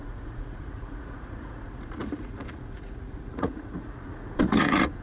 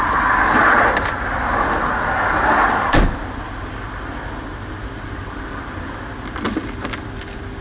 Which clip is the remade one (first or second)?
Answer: first